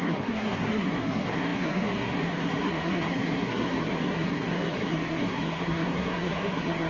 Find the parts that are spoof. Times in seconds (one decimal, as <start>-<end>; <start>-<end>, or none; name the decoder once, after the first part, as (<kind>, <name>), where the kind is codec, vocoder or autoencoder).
0.0-6.9 (codec, SNAC)